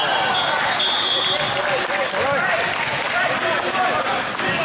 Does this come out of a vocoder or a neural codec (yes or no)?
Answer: no